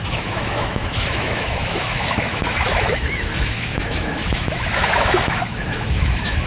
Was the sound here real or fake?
fake